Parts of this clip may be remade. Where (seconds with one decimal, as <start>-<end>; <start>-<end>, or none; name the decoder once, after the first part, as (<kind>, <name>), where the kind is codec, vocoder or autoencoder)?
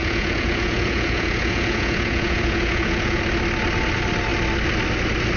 0.0-3.2 (vocoder, Vocos)